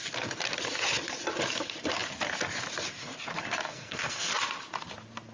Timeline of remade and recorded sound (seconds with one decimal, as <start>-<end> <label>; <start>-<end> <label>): 0.0-3.7 recorded; 3.7-4.3 remade; 4.3-5.3 recorded